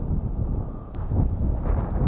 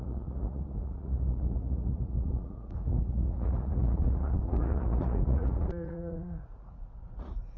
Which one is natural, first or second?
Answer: first